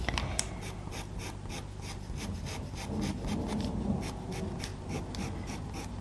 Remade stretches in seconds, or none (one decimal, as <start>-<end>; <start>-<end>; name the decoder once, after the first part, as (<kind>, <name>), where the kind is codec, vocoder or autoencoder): none

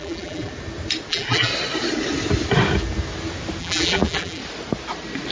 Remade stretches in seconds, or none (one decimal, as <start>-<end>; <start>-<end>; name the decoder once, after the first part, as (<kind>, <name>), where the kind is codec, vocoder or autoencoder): 0.0-0.5 (vocoder, BigVGAN v2); 1.1-1.5; 3.6-4.4